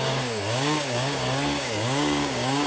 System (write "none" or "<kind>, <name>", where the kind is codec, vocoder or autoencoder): codec, DAC